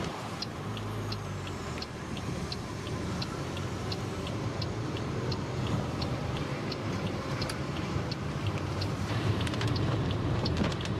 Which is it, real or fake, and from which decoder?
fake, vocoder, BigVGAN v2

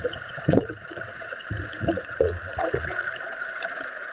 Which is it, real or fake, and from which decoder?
fake, vocoder, Vocos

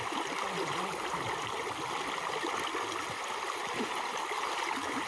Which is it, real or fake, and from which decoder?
real